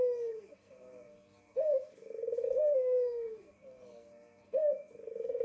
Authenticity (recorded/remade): remade